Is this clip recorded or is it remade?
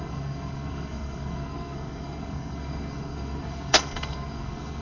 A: remade